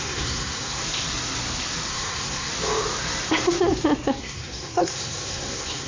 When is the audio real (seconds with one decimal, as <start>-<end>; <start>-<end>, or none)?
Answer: 0.8-1.9; 2.5-4.2

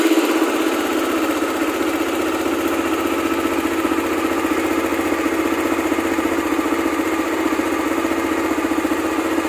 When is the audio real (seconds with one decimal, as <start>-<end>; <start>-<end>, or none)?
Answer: 0.0-9.5

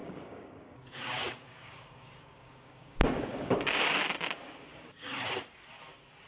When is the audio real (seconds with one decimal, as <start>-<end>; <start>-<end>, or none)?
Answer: 3.8-4.7; 5.3-6.3